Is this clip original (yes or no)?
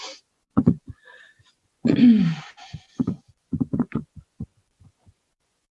no